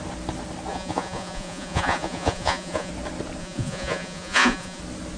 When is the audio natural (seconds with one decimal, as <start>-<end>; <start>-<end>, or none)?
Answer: 0.0-0.7; 2.9-3.4; 4.8-5.2